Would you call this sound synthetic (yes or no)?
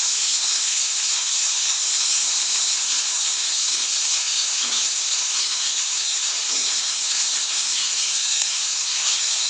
yes